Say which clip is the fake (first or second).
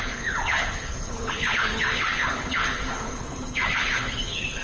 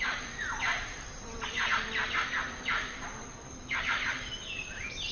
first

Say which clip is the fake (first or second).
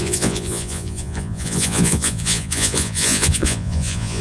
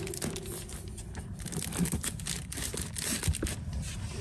first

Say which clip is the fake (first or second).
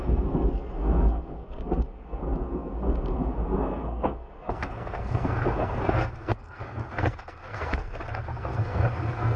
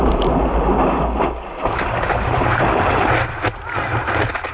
first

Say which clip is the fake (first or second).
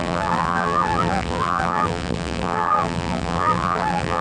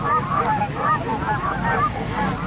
first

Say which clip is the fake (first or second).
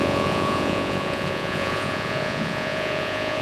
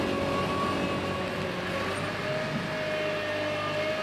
first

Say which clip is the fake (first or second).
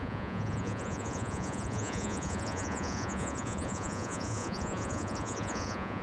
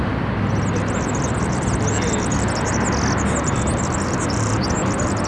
first